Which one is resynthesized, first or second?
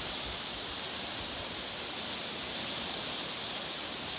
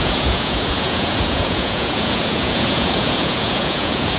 second